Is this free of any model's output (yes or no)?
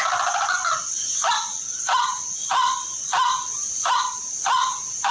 yes